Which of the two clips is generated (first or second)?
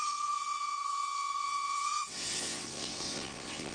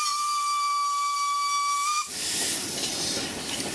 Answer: first